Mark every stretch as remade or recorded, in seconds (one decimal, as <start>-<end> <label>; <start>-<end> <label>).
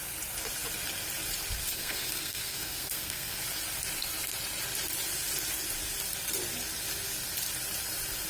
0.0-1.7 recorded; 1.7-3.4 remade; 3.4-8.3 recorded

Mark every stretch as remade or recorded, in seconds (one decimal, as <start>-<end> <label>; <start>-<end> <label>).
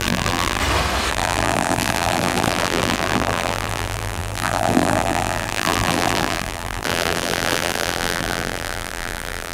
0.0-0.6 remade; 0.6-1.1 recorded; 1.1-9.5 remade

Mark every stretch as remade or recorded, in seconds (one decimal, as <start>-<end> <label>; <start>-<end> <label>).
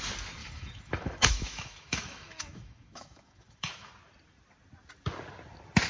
0.0-0.4 recorded; 0.4-3.9 remade; 3.9-5.9 recorded